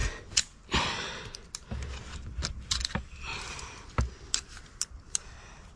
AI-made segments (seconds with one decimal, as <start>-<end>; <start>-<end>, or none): none